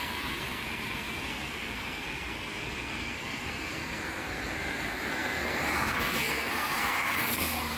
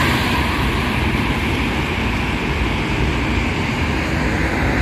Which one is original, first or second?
second